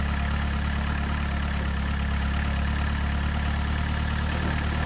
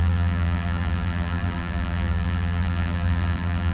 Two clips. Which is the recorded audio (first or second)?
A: first